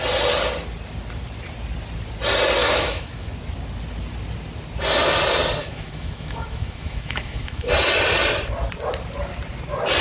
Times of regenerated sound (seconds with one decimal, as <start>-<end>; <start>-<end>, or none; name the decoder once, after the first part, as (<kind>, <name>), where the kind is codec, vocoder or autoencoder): 2.6-3.3 (autoencoder, DAC-VAE); 5.6-7.7